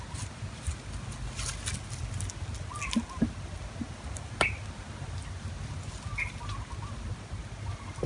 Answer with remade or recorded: recorded